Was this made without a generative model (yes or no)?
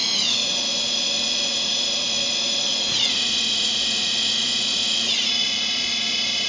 no